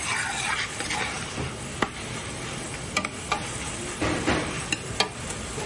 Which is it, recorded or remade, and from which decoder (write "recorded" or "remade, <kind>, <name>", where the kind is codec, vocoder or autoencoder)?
recorded